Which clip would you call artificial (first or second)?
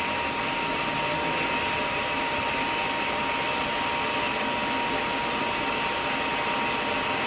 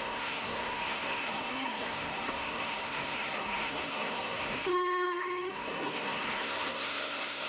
second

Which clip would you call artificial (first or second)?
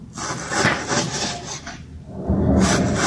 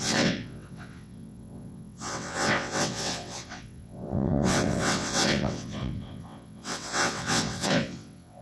second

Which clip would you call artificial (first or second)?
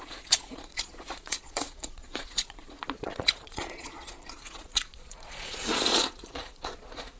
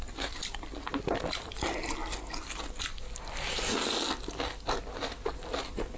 first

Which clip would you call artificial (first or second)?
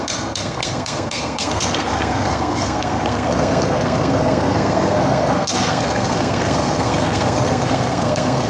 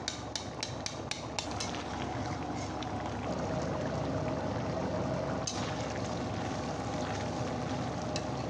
first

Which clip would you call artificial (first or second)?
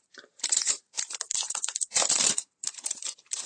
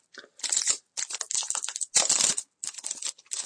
first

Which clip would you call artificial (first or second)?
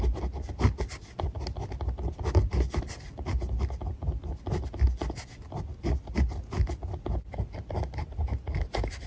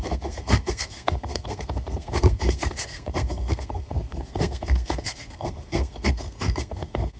second